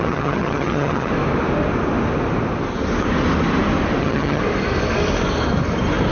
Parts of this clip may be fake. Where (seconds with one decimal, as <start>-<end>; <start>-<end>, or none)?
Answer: 0.0-1.1; 4.0-4.4